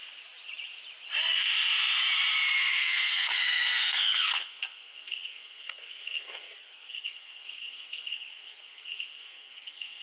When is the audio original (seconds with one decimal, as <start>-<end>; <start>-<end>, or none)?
0.0-1.3; 1.9-2.7